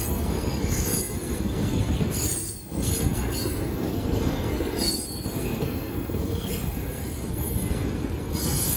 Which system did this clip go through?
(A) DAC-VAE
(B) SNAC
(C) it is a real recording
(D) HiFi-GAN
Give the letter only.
B